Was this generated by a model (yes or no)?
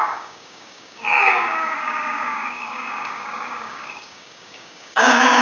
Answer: yes